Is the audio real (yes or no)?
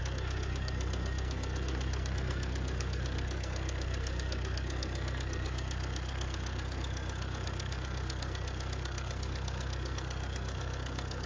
no